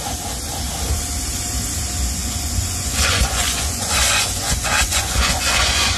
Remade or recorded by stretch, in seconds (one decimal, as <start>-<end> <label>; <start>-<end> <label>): 0.0-2.2 recorded; 2.2-6.0 remade